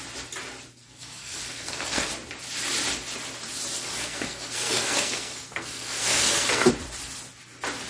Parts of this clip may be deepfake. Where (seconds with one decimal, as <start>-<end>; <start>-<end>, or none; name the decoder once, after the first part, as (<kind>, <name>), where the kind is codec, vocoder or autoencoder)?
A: 0.8-2.1 (codec, SNAC); 3.9-6.7